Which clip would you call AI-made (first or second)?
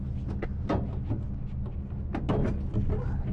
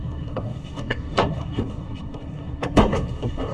second